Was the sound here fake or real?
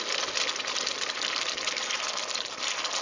real